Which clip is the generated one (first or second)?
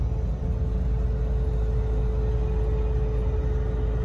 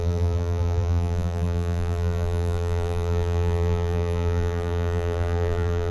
second